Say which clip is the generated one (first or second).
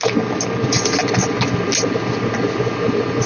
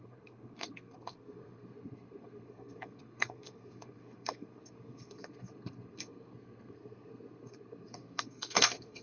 second